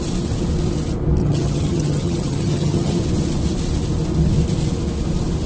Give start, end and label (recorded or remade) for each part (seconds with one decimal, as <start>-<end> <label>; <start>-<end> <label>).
0.0-1.2 recorded; 1.2-3.0 remade; 3.0-5.5 recorded

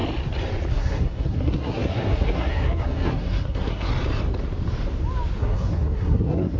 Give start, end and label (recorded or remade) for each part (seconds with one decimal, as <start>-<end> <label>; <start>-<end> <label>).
0.0-0.7 recorded; 0.7-3.9 remade; 3.9-5.4 recorded; 5.4-6.6 remade

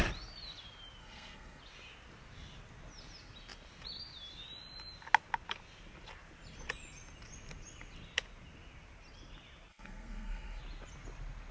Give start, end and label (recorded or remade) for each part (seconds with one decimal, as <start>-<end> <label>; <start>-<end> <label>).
0.0-1.0 recorded; 1.0-1.6 remade; 1.6-9.7 recorded; 9.7-10.6 remade; 10.6-11.5 recorded

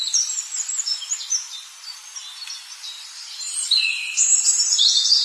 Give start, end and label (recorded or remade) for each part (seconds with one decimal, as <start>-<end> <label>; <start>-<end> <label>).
0.0-1.1 remade; 1.1-3.3 recorded; 3.3-5.2 remade

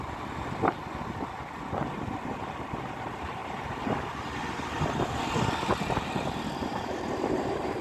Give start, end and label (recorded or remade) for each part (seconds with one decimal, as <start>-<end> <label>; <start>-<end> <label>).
0.0-3.4 recorded; 3.4-4.0 remade; 4.0-7.8 recorded

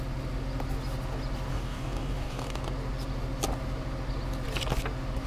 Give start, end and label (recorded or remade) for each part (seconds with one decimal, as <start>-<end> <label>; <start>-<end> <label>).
0.0-1.5 recorded; 1.5-2.6 remade; 2.6-5.3 recorded

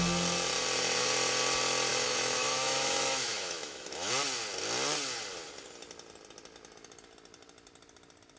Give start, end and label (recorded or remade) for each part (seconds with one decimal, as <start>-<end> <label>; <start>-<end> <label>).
0.0-1.9 recorded; 1.9-4.1 remade; 4.1-8.4 recorded

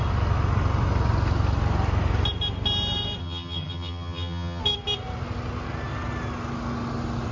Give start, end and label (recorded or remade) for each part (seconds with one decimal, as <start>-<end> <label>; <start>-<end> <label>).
0.0-3.2 recorded; 3.2-4.6 remade; 4.6-7.3 recorded